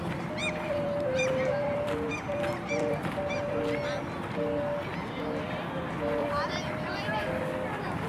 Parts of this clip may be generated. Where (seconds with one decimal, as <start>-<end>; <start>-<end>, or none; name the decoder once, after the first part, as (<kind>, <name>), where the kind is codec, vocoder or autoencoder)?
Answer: 0.4-3.6 (vocoder, BigVGAN v2); 6.2-7.4